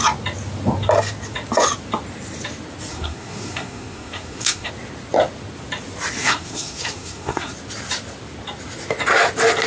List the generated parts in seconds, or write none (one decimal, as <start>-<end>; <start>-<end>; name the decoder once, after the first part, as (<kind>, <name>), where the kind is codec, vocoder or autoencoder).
2.9-4.7 (codec, SNAC); 6.2-7.5